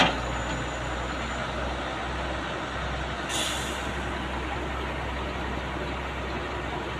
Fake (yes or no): no